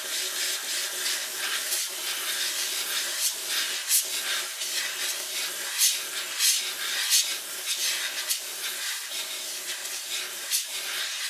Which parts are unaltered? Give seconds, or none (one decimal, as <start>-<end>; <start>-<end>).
0.0-11.3